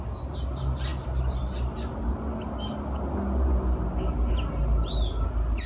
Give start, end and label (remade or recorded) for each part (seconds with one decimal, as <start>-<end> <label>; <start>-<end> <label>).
0.0-5.7 recorded